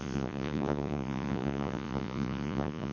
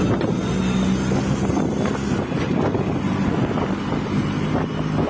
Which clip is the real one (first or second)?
second